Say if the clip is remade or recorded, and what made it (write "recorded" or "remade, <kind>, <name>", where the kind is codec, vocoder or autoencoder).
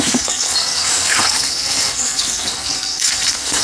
remade, codec, SNAC